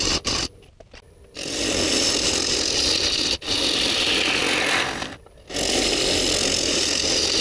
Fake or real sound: real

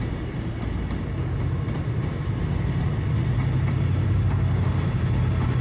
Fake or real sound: real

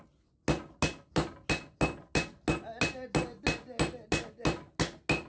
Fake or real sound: real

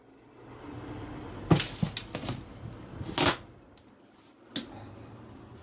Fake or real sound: real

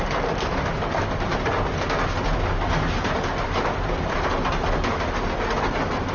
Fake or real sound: real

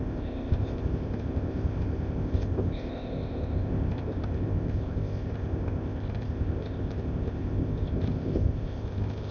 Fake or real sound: fake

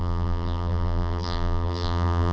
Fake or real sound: fake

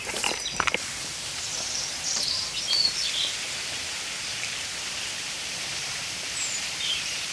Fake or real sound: fake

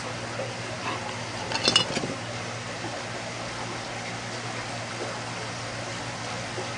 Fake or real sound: real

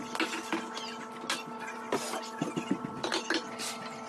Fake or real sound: real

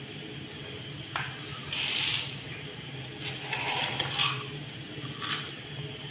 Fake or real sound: real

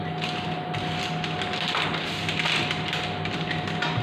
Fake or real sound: real